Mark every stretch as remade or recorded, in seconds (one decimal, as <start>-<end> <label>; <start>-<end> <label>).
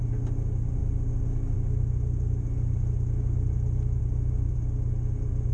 0.0-0.8 recorded; 0.8-4.0 remade; 4.0-5.5 recorded